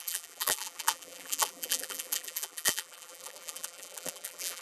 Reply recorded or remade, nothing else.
remade